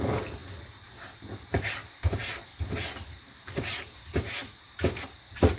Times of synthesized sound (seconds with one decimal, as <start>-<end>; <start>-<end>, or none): 2.2-5.6